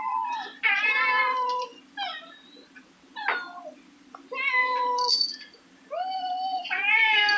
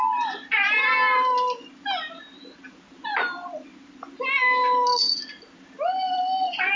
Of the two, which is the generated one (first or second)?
first